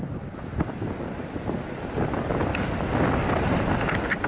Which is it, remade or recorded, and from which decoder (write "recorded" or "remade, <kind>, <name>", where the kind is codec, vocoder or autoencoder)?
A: recorded